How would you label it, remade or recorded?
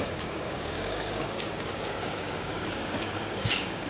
remade